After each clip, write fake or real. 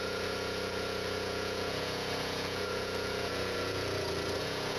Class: fake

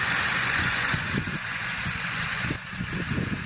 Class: fake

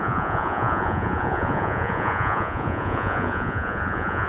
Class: fake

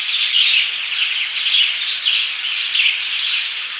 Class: real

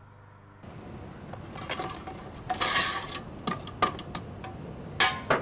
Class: real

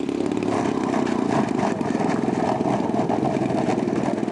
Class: real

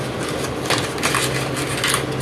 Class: real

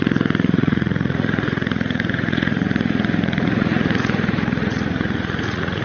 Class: fake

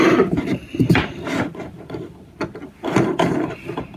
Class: real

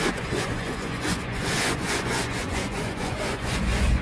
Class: fake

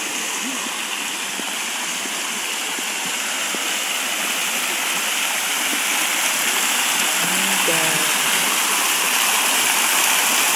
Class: real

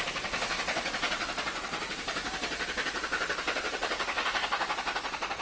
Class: real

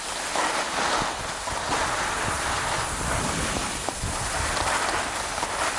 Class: real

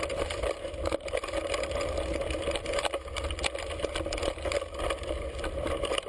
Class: real